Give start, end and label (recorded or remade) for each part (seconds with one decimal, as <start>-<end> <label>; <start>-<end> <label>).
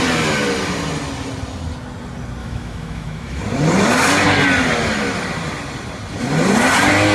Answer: 0.0-2.4 recorded; 2.4-3.4 remade; 3.4-7.1 recorded